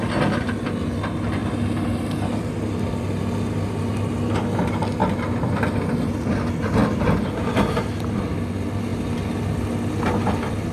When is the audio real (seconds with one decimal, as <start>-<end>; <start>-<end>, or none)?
0.0-6.8; 7.3-10.7